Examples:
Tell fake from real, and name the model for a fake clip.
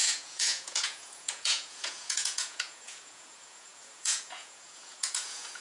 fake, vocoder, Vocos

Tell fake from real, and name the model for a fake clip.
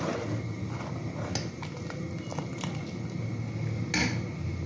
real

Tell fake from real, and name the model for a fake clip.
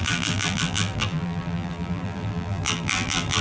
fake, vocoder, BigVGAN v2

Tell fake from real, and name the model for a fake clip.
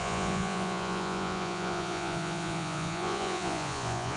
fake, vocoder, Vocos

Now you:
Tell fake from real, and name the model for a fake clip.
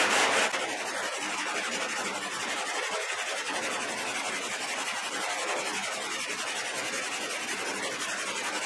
real